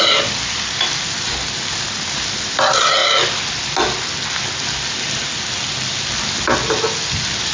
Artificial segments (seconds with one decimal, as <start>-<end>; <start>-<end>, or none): none